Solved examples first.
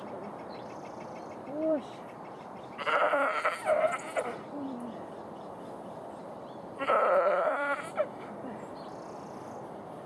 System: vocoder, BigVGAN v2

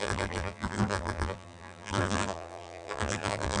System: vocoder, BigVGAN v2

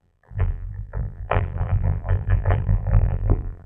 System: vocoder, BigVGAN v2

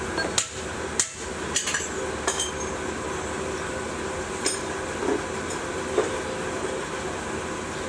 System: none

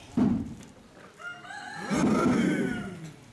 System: none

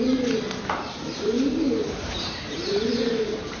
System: vocoder, BigVGAN v2